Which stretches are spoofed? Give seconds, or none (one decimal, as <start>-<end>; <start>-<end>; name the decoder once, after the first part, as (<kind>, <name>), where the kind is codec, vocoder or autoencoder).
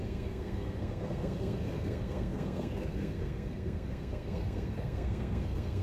0.0-5.8 (codec, SNAC)